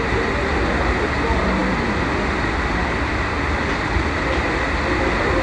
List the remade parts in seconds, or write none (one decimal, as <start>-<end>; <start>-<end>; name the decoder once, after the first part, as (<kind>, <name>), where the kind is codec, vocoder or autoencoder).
none